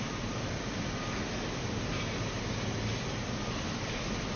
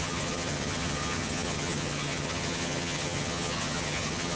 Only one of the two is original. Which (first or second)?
first